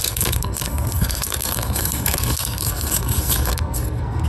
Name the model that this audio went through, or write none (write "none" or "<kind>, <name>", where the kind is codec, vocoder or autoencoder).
codec, SNAC